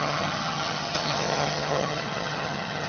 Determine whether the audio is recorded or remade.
remade